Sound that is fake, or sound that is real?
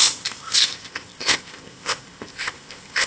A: fake